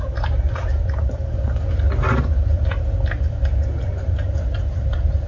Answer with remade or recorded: recorded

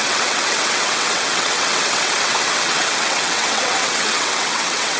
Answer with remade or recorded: remade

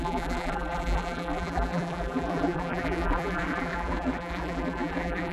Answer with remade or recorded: remade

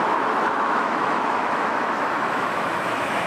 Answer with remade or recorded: remade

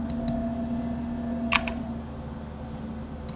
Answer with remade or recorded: recorded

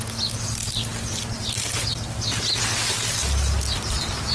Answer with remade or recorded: recorded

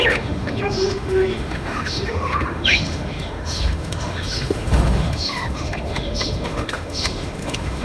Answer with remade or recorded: remade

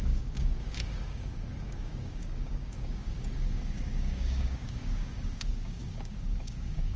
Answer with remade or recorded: remade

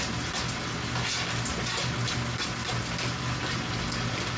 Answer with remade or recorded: recorded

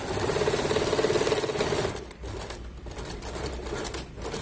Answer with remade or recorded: recorded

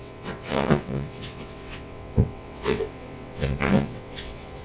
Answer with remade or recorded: remade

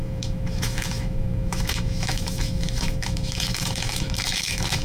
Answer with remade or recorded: remade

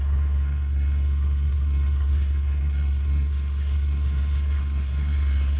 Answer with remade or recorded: remade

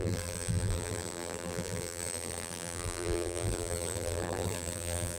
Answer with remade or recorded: remade